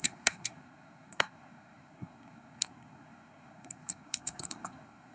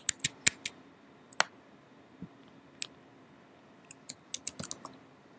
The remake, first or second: first